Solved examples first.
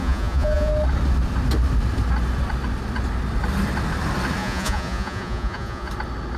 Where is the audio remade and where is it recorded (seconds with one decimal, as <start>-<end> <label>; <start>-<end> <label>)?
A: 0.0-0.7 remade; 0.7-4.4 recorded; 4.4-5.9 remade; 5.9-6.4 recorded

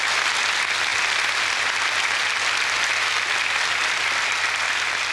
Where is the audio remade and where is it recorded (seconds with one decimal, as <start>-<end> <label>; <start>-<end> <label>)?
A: 0.0-5.1 recorded

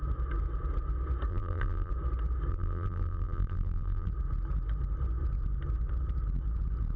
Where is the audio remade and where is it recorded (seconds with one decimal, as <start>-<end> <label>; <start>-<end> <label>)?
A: 0.0-1.3 recorded; 1.3-1.9 remade; 1.9-2.5 recorded; 2.5-4.1 remade; 4.1-7.0 recorded

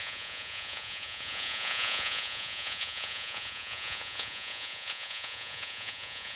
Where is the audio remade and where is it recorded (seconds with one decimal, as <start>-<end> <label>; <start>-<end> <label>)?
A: 0.0-6.4 remade